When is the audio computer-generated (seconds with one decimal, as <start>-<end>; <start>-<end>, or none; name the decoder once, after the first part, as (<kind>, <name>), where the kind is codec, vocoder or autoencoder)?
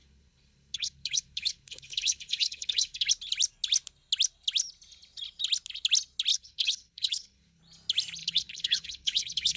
0.0-3.1 (codec, HILCodec); 6.3-7.6; 8.2-9.6